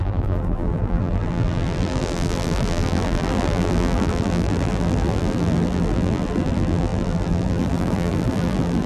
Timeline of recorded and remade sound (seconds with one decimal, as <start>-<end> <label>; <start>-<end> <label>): 0.0-8.9 remade